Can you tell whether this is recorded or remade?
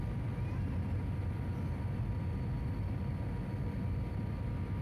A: recorded